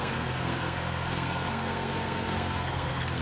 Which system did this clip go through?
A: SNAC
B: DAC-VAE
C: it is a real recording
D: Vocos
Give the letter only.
A